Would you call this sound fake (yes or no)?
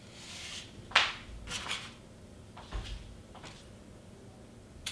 no